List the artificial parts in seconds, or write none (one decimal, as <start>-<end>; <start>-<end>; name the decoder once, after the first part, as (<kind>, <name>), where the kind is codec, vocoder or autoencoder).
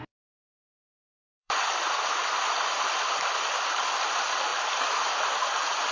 1.2-1.7 (vocoder, BigVGAN v2); 4.5-5.1